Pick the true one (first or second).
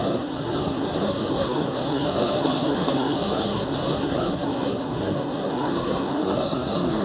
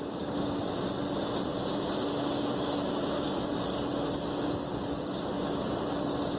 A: second